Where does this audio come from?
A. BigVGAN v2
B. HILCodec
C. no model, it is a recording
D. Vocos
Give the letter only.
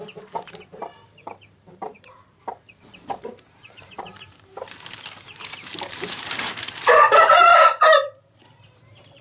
A